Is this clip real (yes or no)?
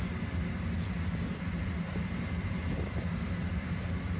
yes